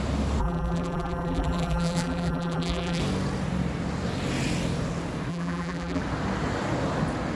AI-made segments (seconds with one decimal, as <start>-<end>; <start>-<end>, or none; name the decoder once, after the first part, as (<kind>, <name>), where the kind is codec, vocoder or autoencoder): 0.4-3.0 (vocoder, BigVGAN v2); 5.3-6.0